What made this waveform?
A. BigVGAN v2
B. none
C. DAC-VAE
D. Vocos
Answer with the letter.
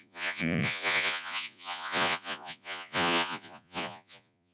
D